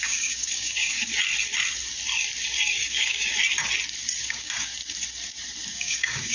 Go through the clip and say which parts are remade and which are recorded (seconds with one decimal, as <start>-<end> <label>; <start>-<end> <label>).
0.0-1.1 remade; 1.1-2.9 recorded; 2.9-3.3 remade; 3.3-4.2 recorded; 4.2-4.7 remade; 4.7-5.7 recorded; 5.7-6.3 remade